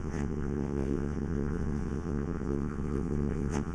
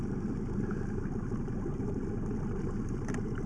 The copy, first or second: first